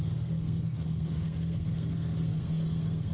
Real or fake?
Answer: fake